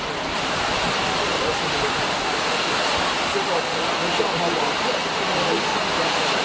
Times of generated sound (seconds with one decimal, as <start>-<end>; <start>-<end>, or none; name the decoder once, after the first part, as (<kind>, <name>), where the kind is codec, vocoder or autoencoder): none